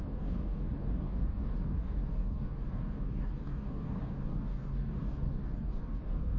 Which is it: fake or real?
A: fake